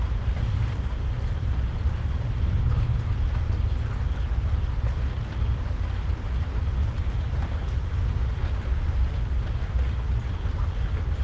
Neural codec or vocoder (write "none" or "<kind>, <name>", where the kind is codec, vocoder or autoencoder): none